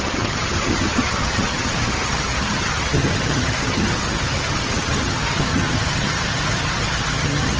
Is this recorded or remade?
remade